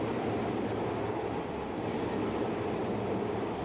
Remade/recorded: recorded